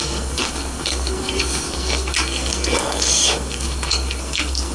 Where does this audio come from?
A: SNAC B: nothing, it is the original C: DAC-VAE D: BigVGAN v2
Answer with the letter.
A